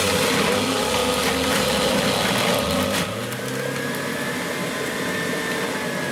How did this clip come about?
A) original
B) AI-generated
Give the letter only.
A